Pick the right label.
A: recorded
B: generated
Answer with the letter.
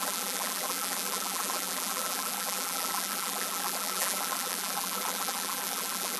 B